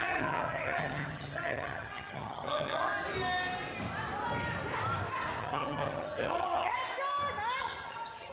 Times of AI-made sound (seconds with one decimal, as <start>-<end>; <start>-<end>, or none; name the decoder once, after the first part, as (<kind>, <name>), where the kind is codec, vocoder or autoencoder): 0.0-2.9 (vocoder, HiFi-GAN); 5.4-6.8; 7.6-8.3